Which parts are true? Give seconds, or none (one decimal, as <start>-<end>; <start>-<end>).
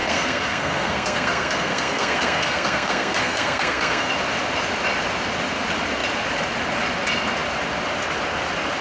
4.1-8.8